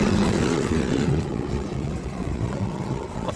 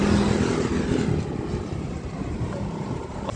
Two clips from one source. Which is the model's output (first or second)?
first